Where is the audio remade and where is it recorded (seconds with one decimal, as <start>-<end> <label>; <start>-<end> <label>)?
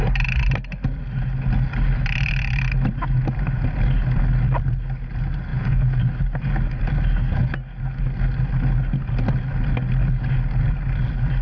0.0-5.5 recorded; 5.5-6.0 remade; 6.0-11.4 recorded